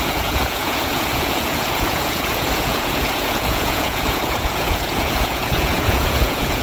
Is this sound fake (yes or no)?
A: yes